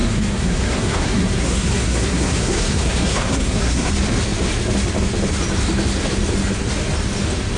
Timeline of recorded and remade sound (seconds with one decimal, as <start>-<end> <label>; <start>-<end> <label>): 0.0-3.9 remade; 3.9-7.6 recorded